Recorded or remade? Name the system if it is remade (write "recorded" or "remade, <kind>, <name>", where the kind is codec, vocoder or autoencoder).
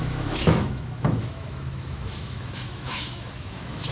remade, autoencoder, DAC-VAE